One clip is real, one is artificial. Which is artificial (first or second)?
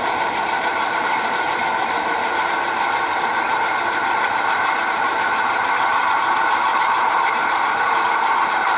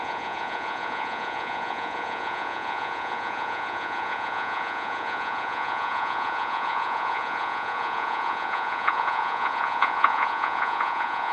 second